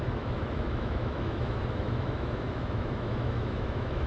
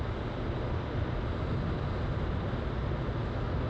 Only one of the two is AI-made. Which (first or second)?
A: first